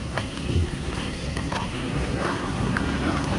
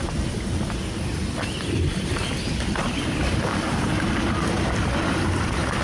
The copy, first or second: first